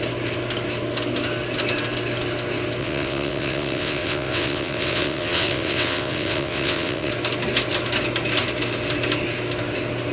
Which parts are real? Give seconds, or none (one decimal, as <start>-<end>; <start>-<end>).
0.0-2.8; 7.1-10.1